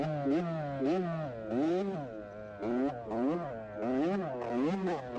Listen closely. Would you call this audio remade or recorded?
recorded